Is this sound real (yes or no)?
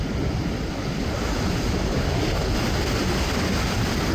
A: yes